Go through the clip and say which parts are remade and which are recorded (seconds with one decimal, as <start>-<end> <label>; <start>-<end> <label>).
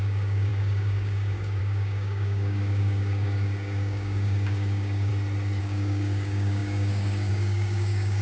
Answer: 0.0-5.1 remade; 5.1-5.6 recorded; 5.6-8.2 remade